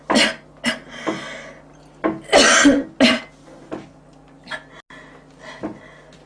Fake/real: real